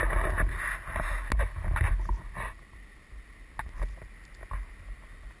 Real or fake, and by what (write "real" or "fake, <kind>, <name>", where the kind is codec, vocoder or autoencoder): real